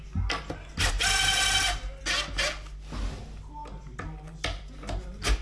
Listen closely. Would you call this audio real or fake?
real